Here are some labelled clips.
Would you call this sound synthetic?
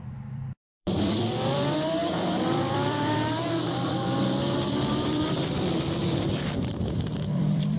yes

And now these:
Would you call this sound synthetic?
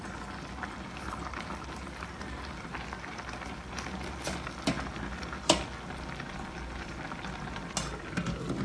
no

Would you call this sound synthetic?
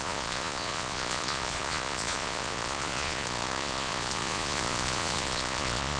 yes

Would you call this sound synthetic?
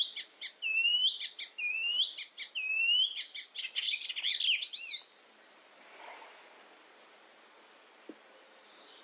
no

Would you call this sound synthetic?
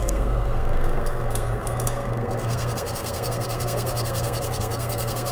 yes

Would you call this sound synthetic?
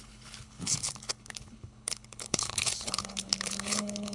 yes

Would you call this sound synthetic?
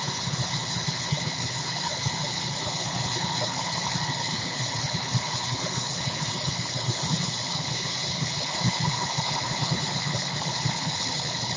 yes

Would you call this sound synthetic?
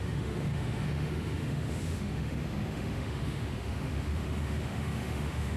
yes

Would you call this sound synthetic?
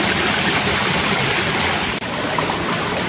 no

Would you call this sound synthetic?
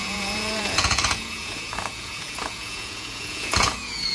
yes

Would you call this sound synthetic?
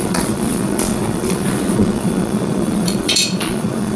yes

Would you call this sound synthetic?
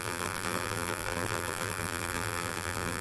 yes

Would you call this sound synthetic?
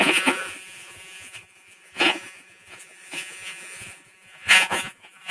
yes